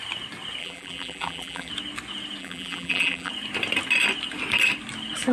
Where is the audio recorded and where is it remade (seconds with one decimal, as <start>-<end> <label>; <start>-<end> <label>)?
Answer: 0.0-0.6 recorded; 0.6-1.7 remade; 1.7-2.4 recorded; 2.4-3.3 remade; 3.3-5.3 recorded